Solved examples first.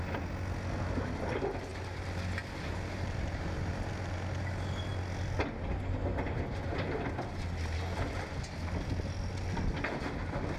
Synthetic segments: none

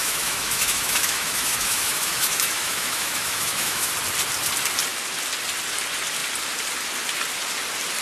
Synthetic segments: 0.0-3.9 (autoencoder, DAC-VAE)

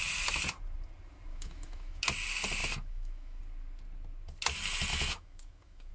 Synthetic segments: 1.3-2.0 (autoencoder, DAC-VAE); 2.6-3.4; 4.9-5.9

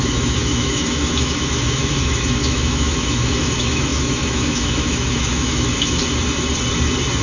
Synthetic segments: 0.0-6.0 (autoencoder, DAC-VAE)

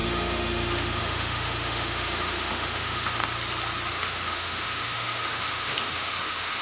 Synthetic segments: 0.0-3.2 (autoencoder, DAC-VAE); 3.9-6.6

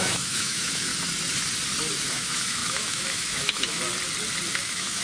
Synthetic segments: 0.0-0.9 (autoencoder, DAC-VAE); 2.1-3.8; 4.5-5.0

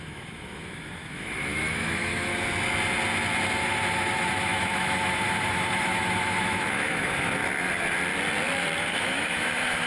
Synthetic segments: 0.0-2.3 (autoencoder, DAC-VAE); 3.6-7.4; 8.8-9.9

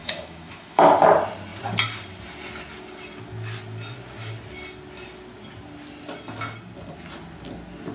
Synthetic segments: 0.0-0.8 (autoencoder, DAC-VAE)